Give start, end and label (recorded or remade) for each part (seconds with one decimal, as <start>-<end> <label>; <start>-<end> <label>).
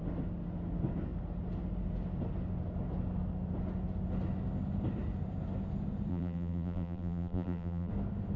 0.0-6.1 recorded; 6.1-7.9 remade; 7.9-8.4 recorded